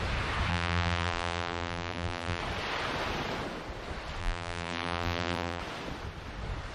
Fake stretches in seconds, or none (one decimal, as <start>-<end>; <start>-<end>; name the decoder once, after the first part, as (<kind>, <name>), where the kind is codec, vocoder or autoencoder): 0.5-2.4 (vocoder, BigVGAN v2); 4.2-5.6